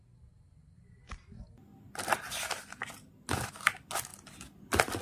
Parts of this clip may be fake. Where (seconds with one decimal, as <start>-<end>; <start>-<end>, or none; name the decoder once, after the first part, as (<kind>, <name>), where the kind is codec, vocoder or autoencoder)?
none